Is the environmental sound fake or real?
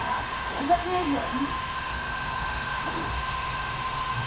fake